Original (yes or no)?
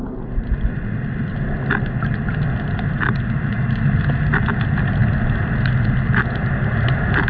yes